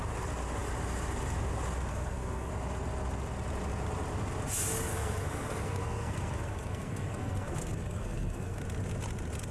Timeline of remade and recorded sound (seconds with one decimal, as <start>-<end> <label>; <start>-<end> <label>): 0.0-1.9 recorded; 1.9-2.5 remade; 2.5-4.9 recorded; 4.9-8.6 remade; 8.6-9.5 recorded